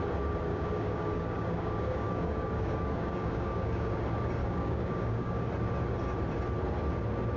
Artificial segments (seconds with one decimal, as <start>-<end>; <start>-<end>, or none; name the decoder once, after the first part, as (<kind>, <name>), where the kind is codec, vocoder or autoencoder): 0.5-4.0 (codec, DAC); 4.4-5.5